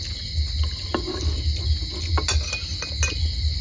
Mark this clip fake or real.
real